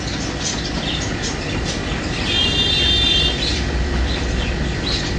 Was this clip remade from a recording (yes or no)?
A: yes